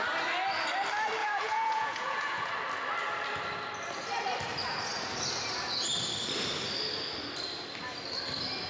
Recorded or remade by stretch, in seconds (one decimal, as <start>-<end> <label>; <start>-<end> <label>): 0.0-1.2 recorded; 1.2-2.5 remade; 2.5-8.7 recorded